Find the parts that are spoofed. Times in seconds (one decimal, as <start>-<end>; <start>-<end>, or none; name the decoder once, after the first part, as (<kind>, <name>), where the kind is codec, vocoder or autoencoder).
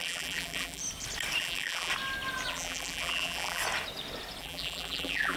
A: 0.0-0.8 (vocoder, BigVGAN v2); 1.4-1.9; 2.5-3.6; 4.4-5.4